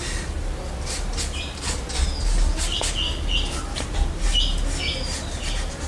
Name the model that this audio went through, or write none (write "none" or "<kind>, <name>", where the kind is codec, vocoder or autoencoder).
none